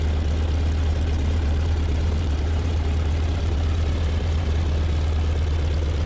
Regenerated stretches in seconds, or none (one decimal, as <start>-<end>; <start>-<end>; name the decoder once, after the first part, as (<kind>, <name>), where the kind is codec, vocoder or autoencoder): 0.9-4.6 (vocoder, BigVGAN v2)